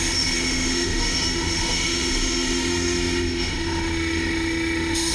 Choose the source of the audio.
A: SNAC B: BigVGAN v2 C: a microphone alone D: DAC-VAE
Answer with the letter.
D